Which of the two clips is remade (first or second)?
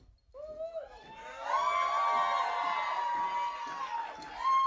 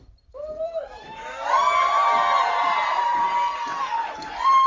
second